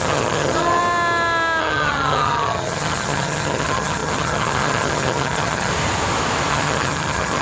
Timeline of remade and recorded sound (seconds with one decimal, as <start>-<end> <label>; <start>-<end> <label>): 0.0-0.8 remade; 0.8-1.6 recorded; 1.6-5.7 remade; 5.7-6.5 recorded; 6.5-7.4 remade